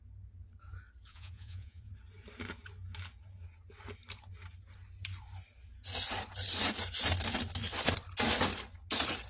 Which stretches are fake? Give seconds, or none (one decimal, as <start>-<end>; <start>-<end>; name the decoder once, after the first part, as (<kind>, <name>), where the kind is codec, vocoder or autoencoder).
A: 1.1-1.9 (vocoder, Vocos)